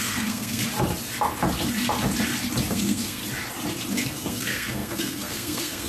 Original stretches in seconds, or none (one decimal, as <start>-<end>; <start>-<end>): 0.6-2.7; 3.2-3.9